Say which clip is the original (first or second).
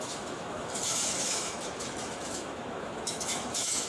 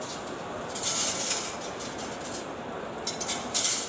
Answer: second